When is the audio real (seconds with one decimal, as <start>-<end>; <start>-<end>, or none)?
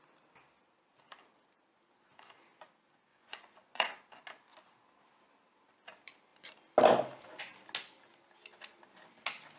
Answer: 0.0-3.1; 3.9-9.6